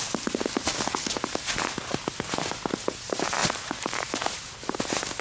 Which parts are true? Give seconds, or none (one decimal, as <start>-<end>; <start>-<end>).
0.0-3.4; 4.8-5.2